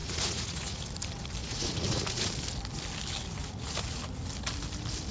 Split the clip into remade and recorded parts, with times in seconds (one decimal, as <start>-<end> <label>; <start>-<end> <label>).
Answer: 0.0-0.8 remade; 0.8-1.4 recorded; 1.4-2.2 remade; 2.2-3.4 recorded; 3.4-4.0 remade; 4.0-5.1 recorded